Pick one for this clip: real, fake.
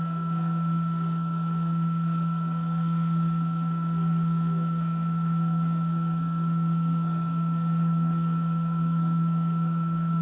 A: fake